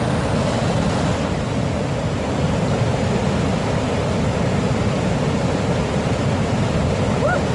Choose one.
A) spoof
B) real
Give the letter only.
B